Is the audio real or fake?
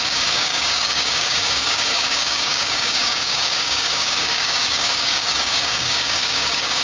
fake